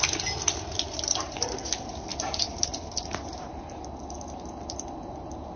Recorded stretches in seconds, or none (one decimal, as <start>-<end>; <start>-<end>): 0.0-5.6